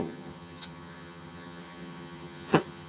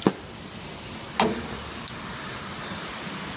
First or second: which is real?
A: second